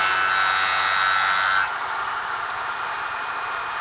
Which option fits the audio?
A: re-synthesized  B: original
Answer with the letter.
B